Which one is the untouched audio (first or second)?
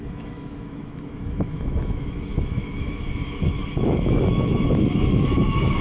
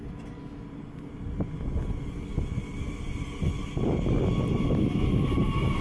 second